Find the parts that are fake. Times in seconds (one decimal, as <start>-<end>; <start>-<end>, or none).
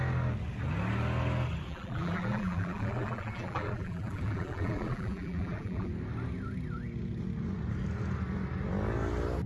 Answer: 1.7-5.9